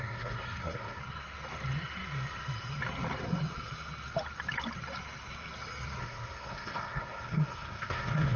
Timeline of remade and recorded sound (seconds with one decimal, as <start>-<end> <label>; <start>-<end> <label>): 0.0-1.0 remade; 1.0-6.0 recorded; 6.0-8.4 remade